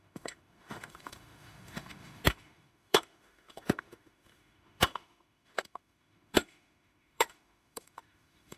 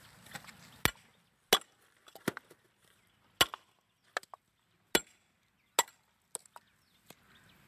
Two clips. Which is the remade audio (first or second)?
first